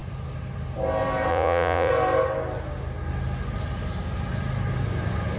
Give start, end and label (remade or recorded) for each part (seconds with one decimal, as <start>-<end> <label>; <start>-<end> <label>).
0.0-1.3 recorded; 1.3-1.9 remade; 1.9-5.4 recorded